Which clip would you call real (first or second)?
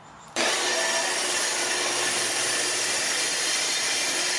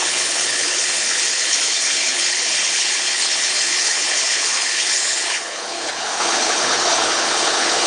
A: first